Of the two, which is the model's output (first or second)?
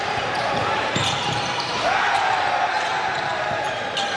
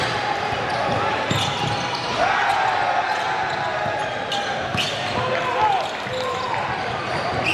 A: first